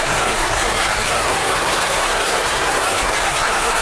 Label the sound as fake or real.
fake